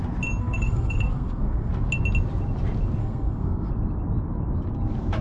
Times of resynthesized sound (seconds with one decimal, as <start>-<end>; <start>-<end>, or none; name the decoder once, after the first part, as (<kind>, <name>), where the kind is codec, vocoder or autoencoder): 0.4-1.7 (codec, SNAC); 3.0-3.7